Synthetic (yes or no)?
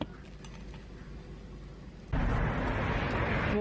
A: no